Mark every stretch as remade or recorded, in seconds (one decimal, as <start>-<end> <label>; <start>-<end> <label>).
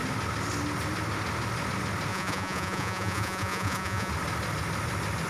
0.0-2.1 recorded; 2.1-4.1 remade; 4.1-5.3 recorded